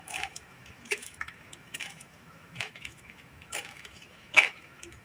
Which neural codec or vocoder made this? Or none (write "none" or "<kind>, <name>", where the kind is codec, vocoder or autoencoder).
autoencoder, DAC-VAE